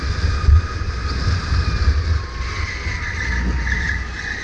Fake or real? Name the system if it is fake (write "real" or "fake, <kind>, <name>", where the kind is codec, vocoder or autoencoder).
real